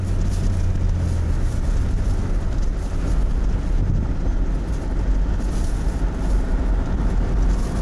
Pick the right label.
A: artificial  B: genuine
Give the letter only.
B